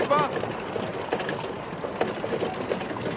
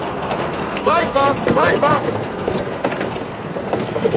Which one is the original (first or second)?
first